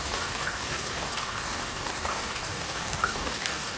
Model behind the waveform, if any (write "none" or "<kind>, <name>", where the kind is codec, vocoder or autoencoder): codec, DAC